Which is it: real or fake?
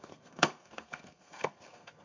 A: fake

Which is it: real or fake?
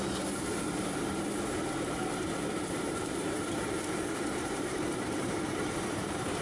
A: fake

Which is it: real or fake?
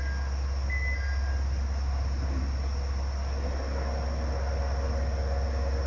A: real